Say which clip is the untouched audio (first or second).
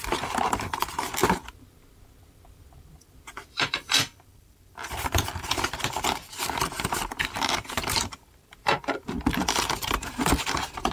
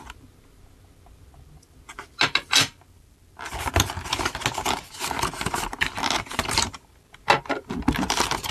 second